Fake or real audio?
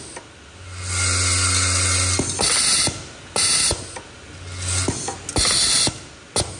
real